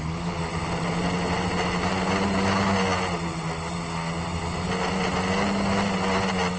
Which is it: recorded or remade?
recorded